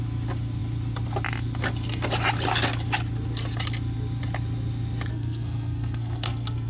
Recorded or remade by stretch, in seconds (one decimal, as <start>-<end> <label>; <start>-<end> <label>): 0.0-5.1 recorded; 5.1-6.7 remade